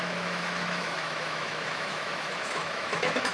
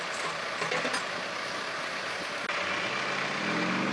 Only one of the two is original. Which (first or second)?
second